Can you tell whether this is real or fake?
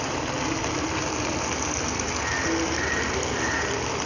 real